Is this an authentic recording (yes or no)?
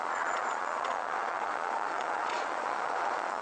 no